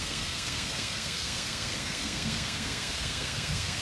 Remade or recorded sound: remade